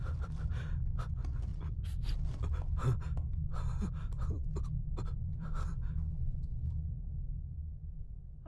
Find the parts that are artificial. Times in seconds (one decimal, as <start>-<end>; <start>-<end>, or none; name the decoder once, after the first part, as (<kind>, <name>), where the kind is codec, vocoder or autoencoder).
0.0-6.5 (vocoder, BigVGAN v2); 7.3-8.5